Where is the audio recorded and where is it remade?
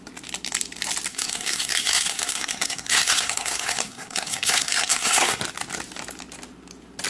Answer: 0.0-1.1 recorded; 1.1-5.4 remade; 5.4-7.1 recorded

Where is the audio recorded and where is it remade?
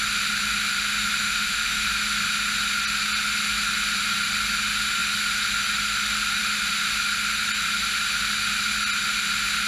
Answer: 0.0-1.2 recorded; 1.2-1.9 remade; 1.9-9.7 recorded